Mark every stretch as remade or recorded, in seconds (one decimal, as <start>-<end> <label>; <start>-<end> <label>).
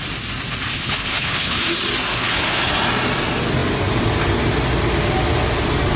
0.0-0.7 recorded; 0.7-1.6 remade; 1.6-2.1 recorded; 2.1-2.7 remade; 2.7-6.0 recorded